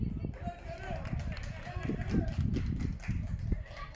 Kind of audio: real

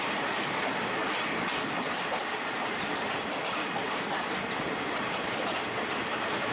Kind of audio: real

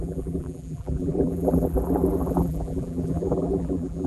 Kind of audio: fake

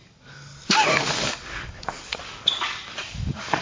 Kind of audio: fake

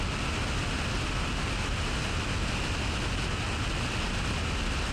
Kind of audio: real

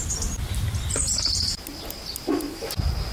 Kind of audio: real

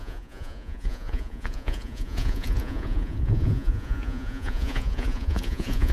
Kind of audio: fake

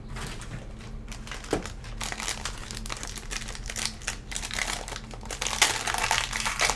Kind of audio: real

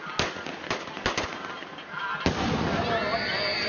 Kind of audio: real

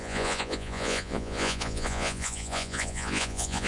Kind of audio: fake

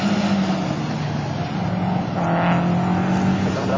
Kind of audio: real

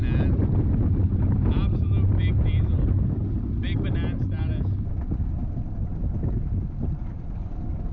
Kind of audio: real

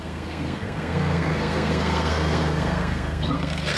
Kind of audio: fake